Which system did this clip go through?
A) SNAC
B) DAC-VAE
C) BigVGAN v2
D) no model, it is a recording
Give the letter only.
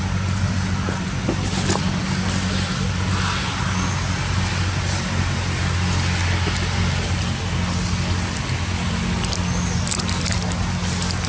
D